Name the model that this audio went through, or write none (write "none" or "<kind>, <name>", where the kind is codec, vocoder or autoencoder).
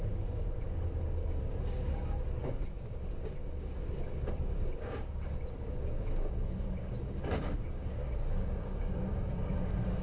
codec, DAC